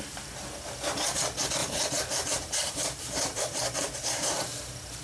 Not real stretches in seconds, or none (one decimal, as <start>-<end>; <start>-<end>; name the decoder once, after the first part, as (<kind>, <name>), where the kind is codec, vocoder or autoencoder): 1.6-4.6 (vocoder, BigVGAN v2)